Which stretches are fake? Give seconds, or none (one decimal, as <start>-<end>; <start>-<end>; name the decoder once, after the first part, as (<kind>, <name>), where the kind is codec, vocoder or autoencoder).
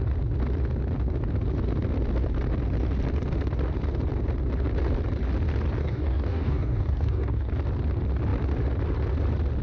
5.8-7.5 (codec, DAC)